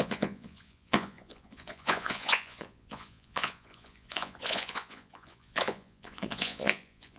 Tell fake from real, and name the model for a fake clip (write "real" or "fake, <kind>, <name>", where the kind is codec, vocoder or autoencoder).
fake, vocoder, Vocos